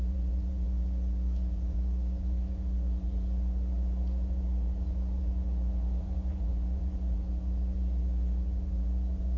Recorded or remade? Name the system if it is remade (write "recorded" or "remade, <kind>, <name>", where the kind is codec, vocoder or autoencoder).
remade, vocoder, Vocos